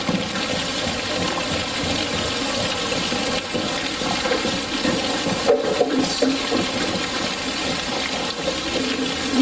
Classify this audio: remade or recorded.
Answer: recorded